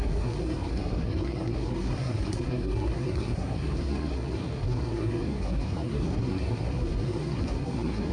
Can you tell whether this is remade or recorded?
remade